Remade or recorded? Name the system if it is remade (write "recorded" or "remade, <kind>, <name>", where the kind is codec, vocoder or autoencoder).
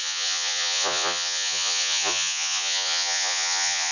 remade, vocoder, Vocos